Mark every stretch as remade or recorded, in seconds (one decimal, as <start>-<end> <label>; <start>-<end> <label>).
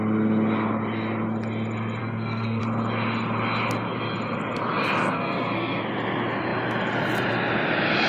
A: 0.0-2.0 recorded; 2.0-2.6 remade; 2.6-5.0 recorded; 5.0-5.8 remade; 5.8-8.1 recorded